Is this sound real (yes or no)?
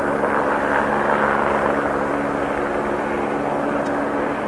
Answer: yes